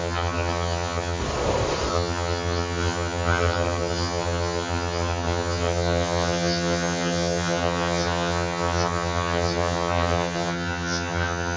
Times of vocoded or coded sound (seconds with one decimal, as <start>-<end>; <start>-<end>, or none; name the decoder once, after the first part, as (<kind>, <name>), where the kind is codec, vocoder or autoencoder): 0.0-1.2 (vocoder, HiFi-GAN); 1.9-11.6